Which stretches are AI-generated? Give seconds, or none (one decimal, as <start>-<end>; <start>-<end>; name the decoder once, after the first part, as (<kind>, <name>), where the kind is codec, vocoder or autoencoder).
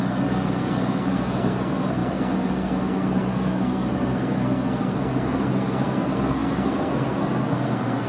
0.0-8.1 (codec, SNAC)